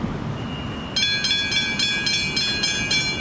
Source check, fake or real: real